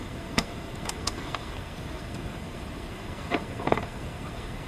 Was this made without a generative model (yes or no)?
no